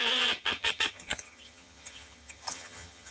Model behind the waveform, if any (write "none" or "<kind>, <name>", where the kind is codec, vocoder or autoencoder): vocoder, HiFi-GAN